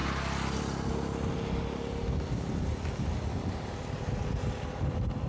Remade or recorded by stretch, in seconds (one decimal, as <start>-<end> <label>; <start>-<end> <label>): 0.0-5.3 recorded